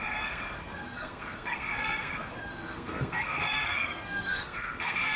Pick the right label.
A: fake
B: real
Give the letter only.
A